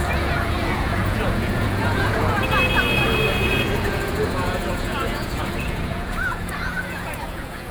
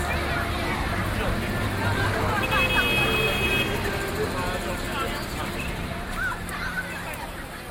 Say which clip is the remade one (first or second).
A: first